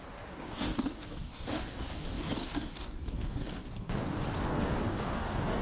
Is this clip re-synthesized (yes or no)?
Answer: yes